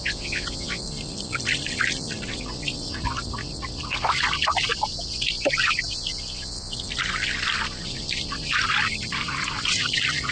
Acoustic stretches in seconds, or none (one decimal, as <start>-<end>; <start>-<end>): 0.8-10.3

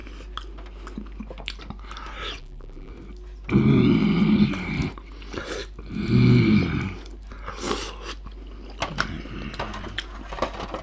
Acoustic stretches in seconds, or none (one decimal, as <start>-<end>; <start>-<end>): 0.0-2.4; 2.9-10.8

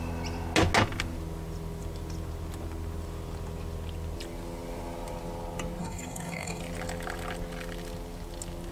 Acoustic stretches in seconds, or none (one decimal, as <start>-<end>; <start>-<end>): 0.0-5.8; 6.6-8.7

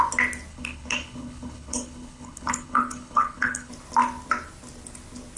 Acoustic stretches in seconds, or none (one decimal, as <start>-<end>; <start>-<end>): 0.0-0.5; 3.7-5.4

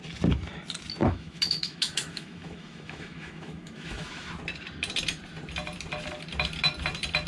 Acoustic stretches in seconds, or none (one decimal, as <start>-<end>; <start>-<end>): 0.0-1.0; 4.3-7.3